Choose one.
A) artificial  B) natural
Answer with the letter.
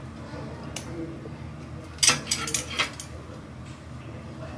B